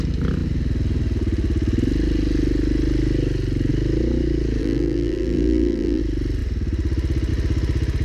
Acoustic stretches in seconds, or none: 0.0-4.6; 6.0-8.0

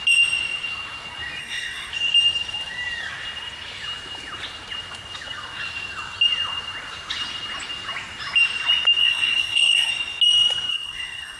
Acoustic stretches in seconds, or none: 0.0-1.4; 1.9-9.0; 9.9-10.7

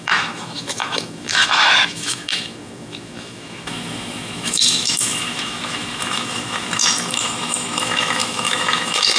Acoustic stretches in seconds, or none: none